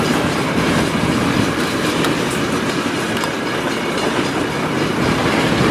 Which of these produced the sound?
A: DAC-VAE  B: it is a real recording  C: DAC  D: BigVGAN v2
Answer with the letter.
D